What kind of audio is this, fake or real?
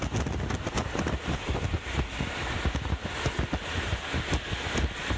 real